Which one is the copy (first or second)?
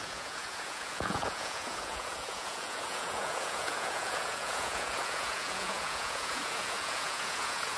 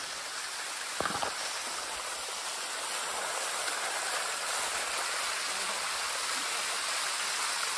first